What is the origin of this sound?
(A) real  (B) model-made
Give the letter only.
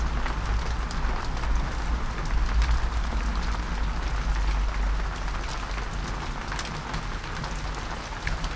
A